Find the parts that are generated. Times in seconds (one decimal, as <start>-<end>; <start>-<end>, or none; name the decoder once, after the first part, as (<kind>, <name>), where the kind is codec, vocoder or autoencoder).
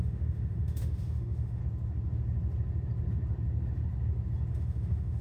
0.0-1.6 (autoencoder, DAC-VAE); 4.5-5.2